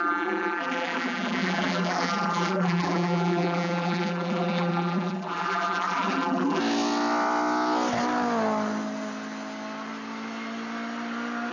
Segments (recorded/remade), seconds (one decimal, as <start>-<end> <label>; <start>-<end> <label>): 0.0-6.6 remade; 6.6-11.5 recorded